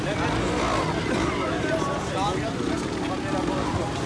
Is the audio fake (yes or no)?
no